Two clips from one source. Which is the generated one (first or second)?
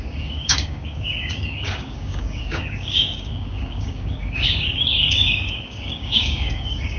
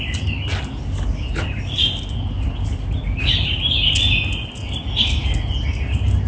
first